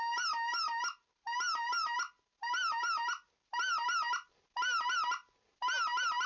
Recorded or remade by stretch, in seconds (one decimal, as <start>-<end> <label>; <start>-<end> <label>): 0.0-6.3 recorded